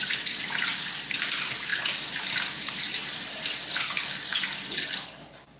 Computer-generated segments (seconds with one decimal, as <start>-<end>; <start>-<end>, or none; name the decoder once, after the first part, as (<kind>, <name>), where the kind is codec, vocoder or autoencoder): none